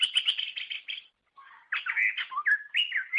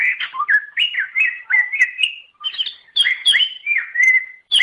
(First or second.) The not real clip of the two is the second